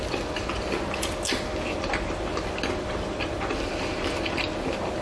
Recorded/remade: recorded